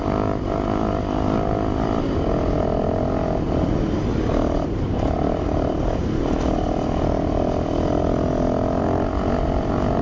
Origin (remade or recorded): recorded